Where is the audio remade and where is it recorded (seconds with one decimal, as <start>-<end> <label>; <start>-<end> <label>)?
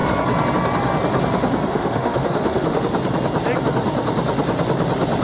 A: 0.0-1.7 recorded; 1.7-2.8 remade; 2.8-5.2 recorded